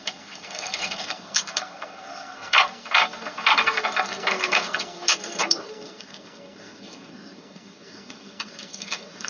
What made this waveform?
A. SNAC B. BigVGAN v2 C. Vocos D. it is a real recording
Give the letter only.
A